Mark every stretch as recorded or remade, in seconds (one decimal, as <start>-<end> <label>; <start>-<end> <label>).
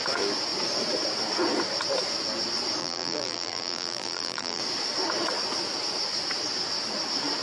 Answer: 0.0-2.8 recorded; 2.8-4.6 remade; 4.6-7.4 recorded